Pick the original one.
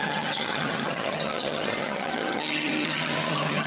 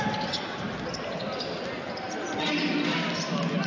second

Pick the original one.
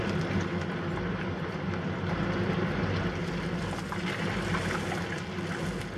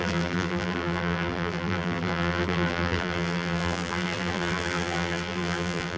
first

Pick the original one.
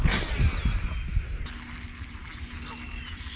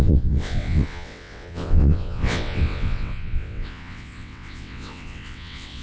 first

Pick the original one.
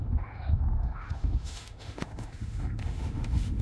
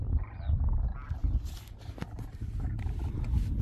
second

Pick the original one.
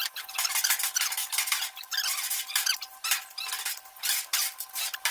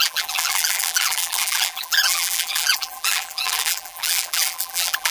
first